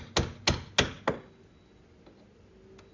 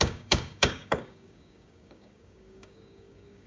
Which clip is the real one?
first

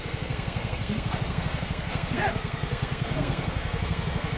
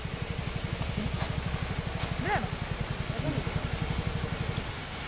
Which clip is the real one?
second